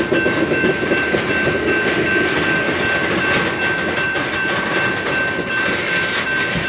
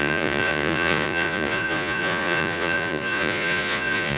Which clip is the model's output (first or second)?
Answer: second